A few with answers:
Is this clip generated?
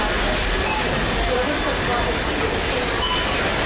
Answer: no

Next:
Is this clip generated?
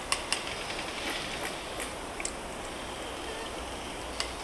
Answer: no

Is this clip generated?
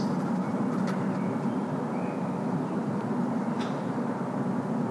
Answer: no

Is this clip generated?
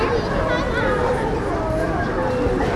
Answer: no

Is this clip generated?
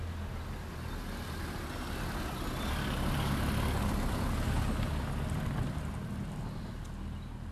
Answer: no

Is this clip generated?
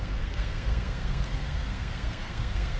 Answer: yes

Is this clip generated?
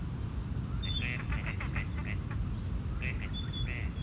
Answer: no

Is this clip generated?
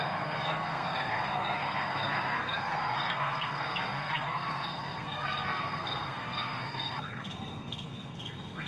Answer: yes